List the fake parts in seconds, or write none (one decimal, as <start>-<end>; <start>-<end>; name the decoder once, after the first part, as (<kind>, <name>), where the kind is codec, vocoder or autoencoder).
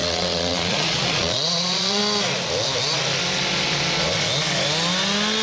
0.0-2.0 (vocoder, Vocos)